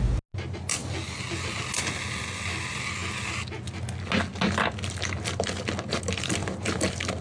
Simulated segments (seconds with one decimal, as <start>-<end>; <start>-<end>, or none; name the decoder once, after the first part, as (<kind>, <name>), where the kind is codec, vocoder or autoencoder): none